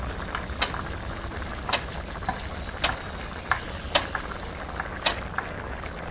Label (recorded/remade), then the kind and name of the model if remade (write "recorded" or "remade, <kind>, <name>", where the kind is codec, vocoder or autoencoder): recorded